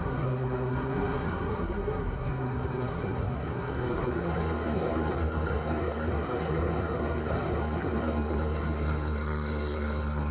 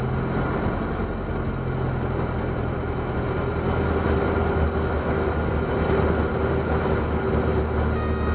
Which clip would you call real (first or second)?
second